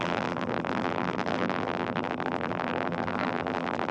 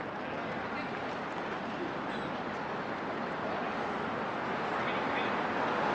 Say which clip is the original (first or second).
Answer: second